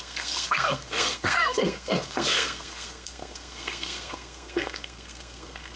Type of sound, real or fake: fake